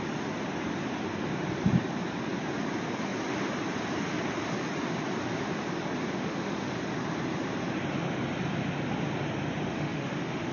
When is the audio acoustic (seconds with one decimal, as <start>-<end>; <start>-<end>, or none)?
0.0-6.2; 6.7-9.7